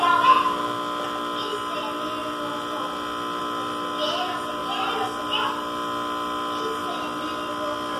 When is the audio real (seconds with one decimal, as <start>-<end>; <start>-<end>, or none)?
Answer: 0.0-8.0